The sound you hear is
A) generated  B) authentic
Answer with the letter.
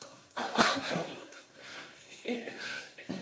A